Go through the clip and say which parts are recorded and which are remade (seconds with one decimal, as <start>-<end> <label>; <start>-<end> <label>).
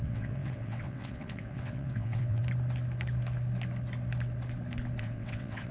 0.0-2.4 remade; 2.4-5.0 recorded; 5.0-5.7 remade